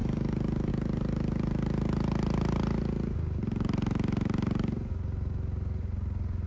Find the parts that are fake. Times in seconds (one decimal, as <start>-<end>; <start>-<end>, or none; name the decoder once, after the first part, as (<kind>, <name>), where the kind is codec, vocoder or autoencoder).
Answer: none